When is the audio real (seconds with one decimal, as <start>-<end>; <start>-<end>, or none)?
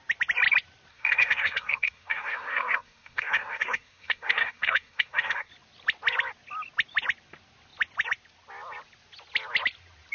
0.0-0.9; 5.5-10.1